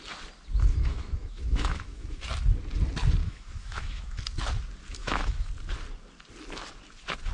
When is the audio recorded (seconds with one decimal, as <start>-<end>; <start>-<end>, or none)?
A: 0.0-0.7; 2.2-3.2; 4.2-5.0; 5.5-7.3